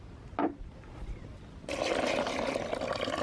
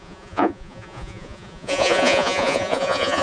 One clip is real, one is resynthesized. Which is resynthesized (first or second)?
second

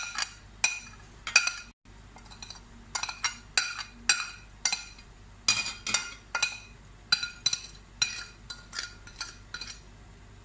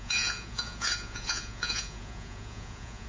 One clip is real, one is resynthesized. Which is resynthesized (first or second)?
second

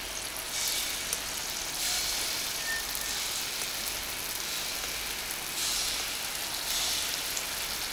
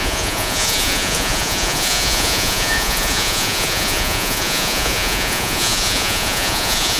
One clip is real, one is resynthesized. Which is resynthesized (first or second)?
second